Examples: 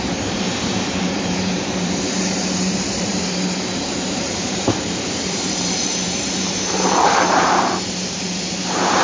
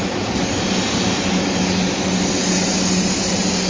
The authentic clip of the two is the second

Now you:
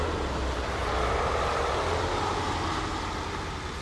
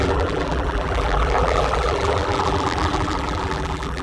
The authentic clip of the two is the first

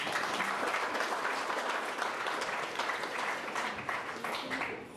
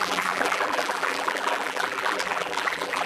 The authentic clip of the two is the first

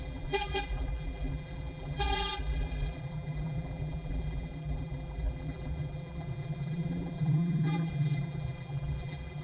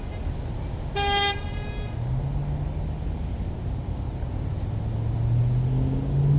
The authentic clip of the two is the second